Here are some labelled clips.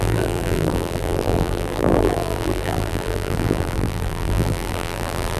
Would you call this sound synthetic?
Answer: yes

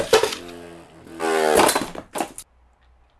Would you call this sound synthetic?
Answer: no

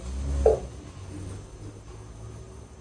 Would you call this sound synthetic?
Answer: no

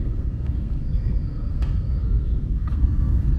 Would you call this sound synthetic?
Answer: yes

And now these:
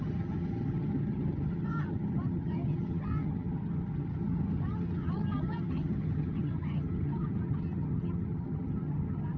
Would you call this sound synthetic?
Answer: yes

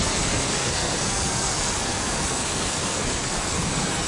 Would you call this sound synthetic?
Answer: yes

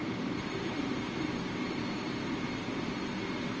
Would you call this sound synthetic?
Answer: yes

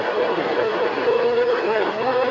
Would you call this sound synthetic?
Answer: yes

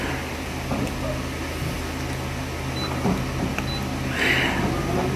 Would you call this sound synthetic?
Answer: no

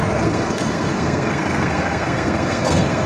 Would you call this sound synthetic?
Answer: yes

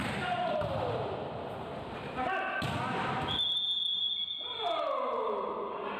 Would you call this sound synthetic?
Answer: no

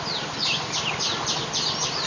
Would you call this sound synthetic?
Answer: no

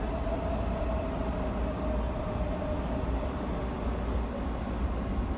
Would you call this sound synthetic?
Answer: no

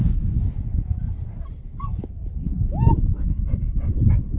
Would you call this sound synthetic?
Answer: no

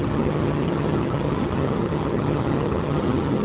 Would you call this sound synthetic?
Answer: yes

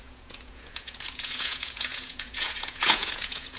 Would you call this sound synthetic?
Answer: yes